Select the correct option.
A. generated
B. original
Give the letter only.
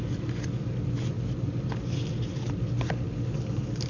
B